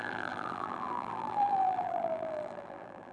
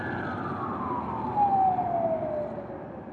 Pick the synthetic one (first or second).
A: first